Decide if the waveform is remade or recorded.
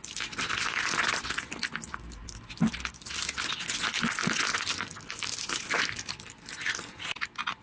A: recorded